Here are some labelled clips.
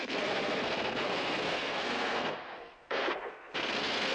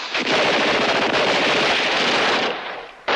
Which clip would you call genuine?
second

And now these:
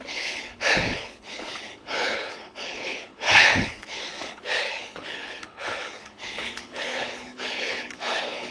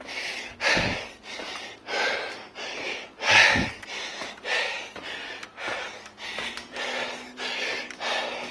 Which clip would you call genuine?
second